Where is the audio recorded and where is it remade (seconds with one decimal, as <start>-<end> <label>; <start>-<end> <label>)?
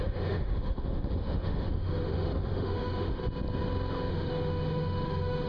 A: 0.0-3.2 remade; 3.2-4.1 recorded; 4.1-5.5 remade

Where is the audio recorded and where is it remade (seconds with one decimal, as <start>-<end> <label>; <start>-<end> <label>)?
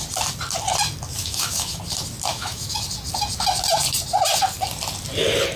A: 0.0-1.2 recorded; 1.2-1.8 remade; 1.8-2.3 recorded; 2.3-2.8 remade; 2.8-5.6 recorded